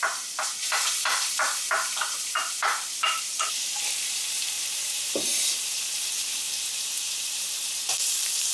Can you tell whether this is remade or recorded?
remade